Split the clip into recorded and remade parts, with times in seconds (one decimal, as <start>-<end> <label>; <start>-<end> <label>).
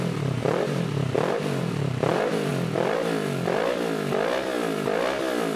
0.0-2.5 remade; 2.5-5.6 recorded